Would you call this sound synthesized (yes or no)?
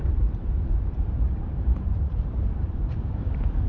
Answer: yes